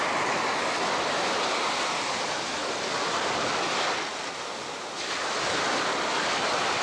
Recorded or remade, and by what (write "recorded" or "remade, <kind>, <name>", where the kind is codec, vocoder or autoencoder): recorded